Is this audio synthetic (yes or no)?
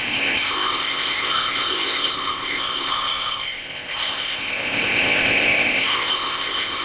yes